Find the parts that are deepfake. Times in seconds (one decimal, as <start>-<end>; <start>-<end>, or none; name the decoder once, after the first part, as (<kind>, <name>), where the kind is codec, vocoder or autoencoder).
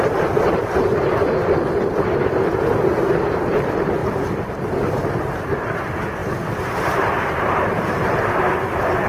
0.6-1.2 (vocoder, BigVGAN v2); 4.0-4.9; 6.2-8.5